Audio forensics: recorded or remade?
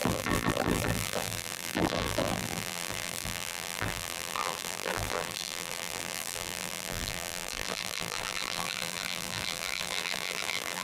remade